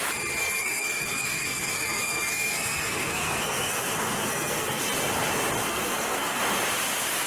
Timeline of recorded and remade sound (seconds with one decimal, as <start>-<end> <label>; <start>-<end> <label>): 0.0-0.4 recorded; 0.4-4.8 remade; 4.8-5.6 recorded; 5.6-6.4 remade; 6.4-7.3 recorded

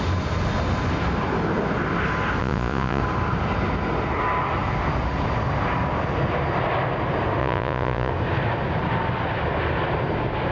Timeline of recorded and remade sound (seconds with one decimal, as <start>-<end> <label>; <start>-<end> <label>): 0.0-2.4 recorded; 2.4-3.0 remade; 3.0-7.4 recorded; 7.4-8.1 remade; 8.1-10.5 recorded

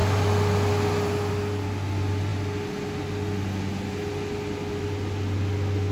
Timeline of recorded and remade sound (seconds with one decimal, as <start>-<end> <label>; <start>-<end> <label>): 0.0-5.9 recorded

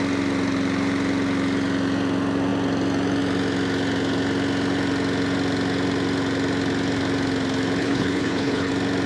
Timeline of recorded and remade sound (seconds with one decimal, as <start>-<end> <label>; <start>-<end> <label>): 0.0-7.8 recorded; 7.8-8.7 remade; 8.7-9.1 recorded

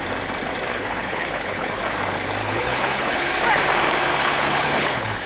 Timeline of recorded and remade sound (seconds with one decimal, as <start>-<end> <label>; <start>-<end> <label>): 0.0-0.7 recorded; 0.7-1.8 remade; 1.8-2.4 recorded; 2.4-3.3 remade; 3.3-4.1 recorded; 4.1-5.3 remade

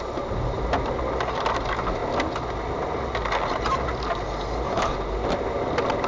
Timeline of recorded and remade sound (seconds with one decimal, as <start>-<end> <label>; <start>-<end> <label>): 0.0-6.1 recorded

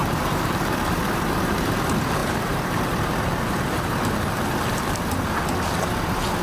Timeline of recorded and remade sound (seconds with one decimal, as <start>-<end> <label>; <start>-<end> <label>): 0.0-1.7 remade; 1.7-2.2 recorded; 2.2-2.7 remade; 2.7-6.4 recorded